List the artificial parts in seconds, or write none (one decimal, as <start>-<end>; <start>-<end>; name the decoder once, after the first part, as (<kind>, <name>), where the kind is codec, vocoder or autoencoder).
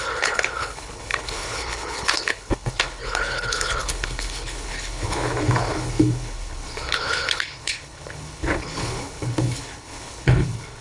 0.0-10.8 (codec, HILCodec)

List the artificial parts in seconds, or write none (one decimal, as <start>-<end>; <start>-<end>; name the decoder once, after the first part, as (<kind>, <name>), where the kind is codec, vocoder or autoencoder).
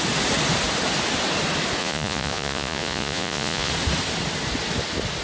1.8-3.7 (vocoder, Vocos)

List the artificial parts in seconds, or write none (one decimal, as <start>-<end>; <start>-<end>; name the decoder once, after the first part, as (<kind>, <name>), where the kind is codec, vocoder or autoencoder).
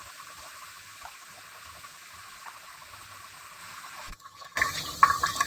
0.8-1.4 (autoencoder, DAC-VAE); 1.9-2.4; 3.6-4.6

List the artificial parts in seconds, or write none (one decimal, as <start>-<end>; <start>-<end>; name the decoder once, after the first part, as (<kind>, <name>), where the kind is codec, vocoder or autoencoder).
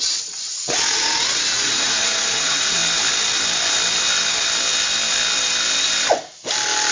0.0-2.8 (vocoder, Vocos)